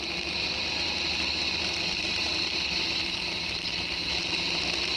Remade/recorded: recorded